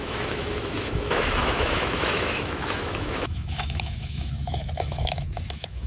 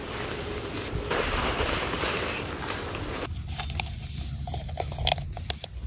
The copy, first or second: first